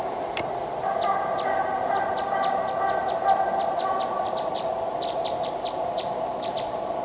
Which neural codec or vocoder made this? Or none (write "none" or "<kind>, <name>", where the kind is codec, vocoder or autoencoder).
none